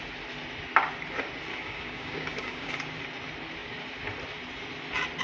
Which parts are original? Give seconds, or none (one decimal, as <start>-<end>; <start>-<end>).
0.0-1.5; 2.7-5.2